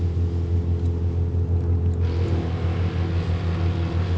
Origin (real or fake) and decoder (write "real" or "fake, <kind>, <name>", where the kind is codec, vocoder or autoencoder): real